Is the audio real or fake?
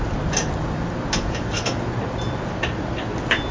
real